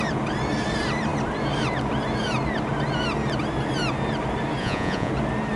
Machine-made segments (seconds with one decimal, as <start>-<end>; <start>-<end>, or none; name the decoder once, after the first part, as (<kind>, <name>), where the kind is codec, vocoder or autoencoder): 4.6-5.1 (vocoder, Vocos)